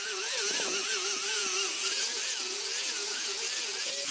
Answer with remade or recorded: remade